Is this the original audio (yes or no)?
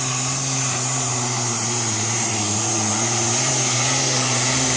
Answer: yes